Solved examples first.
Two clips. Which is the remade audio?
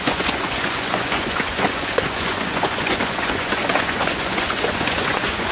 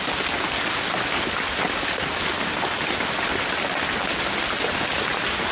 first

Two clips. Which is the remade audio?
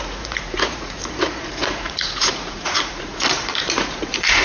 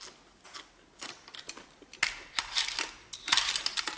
first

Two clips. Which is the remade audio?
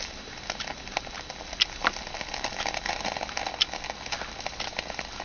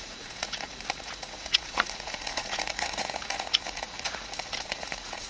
second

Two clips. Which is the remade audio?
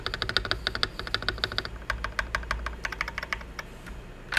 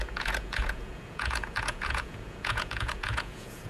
second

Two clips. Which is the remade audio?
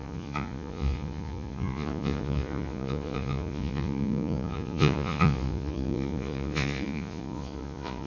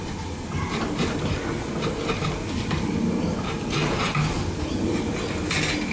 first